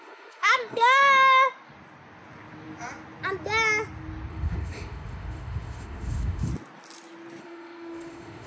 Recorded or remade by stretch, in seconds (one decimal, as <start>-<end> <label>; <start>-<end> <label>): 0.0-1.0 remade; 1.0-4.3 recorded; 4.3-6.5 remade; 6.5-7.4 recorded; 7.4-8.5 remade

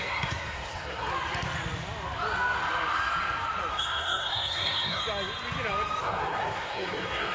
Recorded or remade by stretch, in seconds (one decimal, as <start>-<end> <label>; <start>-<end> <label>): 0.0-1.1 remade; 1.1-3.7 recorded; 3.7-5.0 remade; 5.0-6.0 recorded; 6.0-7.3 remade

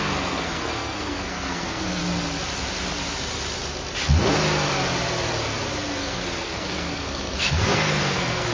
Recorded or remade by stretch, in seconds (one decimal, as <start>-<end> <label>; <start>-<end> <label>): 0.0-2.0 remade; 2.0-6.0 recorded; 6.0-8.5 remade

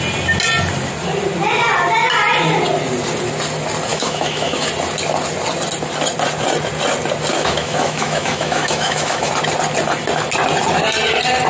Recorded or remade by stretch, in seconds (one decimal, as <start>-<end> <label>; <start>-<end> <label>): 0.0-3.9 recorded; 3.9-4.7 remade; 4.7-7.3 recorded; 7.3-9.3 remade; 9.3-11.5 recorded

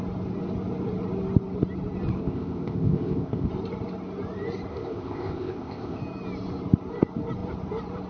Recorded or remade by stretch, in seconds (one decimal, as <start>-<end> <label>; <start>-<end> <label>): 0.0-2.2 recorded; 2.2-3.5 remade; 3.5-4.7 recorded; 4.7-6.0 remade; 6.0-8.1 recorded

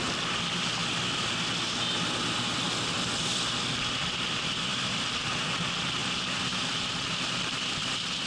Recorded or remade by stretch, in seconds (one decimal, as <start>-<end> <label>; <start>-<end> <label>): 0.0-0.8 remade; 0.8-1.7 recorded; 1.7-8.3 remade

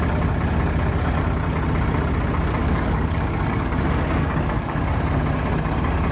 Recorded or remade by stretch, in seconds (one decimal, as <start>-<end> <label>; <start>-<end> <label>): 0.0-2.6 recorded; 2.6-4.8 remade; 4.8-6.1 recorded